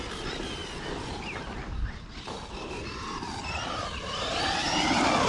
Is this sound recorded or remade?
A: recorded